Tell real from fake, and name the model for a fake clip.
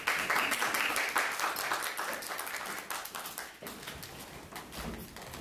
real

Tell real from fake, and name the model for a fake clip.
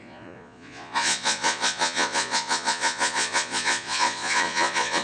fake, vocoder, Vocos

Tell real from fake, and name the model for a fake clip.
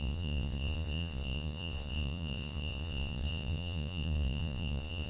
fake, vocoder, Vocos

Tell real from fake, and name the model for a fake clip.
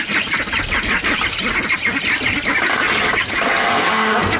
real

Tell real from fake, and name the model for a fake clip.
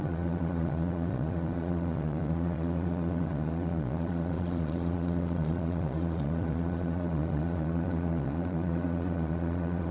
fake, vocoder, Vocos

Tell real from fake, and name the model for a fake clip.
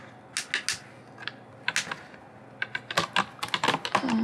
real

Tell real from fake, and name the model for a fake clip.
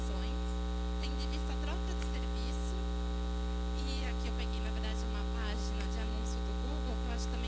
real